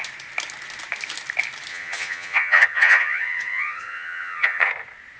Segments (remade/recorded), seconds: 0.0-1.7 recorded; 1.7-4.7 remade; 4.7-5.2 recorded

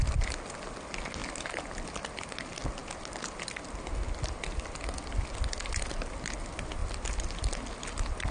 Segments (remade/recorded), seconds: 0.0-1.2 recorded; 1.2-2.2 remade; 2.2-8.3 recorded

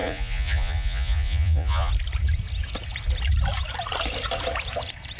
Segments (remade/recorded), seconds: 0.0-1.9 remade; 1.9-5.2 recorded